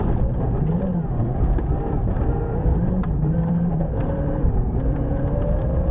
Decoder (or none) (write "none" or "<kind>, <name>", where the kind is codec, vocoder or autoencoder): vocoder, BigVGAN v2